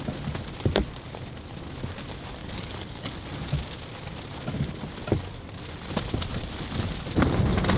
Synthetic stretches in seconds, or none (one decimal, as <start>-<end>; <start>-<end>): 2.4-3.1